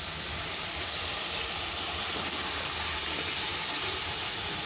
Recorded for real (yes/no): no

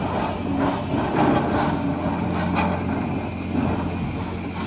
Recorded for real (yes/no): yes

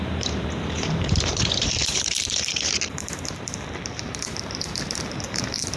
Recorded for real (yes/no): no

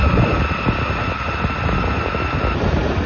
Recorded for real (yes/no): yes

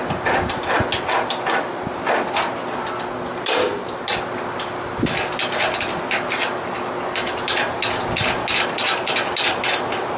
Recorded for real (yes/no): yes